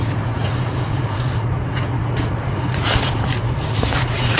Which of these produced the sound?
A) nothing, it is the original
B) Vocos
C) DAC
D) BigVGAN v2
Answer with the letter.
B